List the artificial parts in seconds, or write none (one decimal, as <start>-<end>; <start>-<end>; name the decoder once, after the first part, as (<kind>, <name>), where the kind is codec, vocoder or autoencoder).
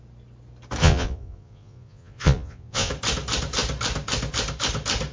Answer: 0.8-2.9 (vocoder, Vocos)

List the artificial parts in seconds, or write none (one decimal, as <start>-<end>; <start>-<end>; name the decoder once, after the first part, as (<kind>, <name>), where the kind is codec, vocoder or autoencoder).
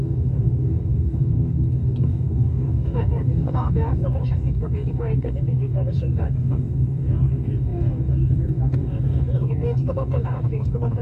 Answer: 0.0-11.0 (codec, DAC)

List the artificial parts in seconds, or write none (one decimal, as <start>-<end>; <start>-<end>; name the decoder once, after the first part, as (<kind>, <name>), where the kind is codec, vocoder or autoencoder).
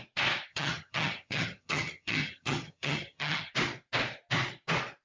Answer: 0.5-3.5 (vocoder, HiFi-GAN)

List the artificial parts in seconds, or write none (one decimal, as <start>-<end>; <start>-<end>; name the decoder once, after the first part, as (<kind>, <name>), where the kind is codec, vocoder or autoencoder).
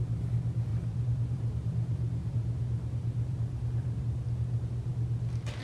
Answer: 0.7-4.0 (vocoder, BigVGAN v2)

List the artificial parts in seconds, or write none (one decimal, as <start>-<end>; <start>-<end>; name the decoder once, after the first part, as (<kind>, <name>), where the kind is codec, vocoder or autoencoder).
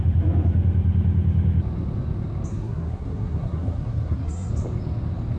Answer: 2.5-4.5 (codec, SNAC)